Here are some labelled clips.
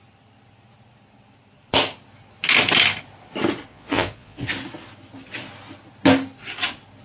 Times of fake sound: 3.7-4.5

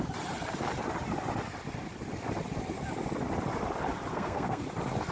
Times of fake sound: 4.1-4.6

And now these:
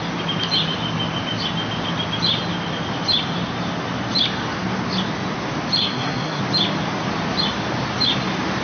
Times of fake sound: 5.8-6.4